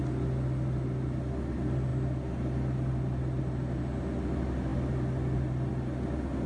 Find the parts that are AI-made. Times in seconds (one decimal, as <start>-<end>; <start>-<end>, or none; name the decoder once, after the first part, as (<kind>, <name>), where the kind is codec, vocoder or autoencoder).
none